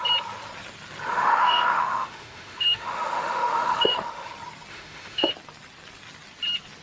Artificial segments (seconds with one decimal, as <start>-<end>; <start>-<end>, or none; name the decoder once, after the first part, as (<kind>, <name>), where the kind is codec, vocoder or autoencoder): 1.1-4.3 (autoencoder, DAC-VAE); 4.7-5.3